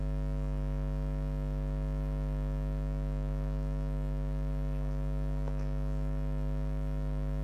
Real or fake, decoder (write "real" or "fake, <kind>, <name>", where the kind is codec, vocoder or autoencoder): fake, autoencoder, DAC-VAE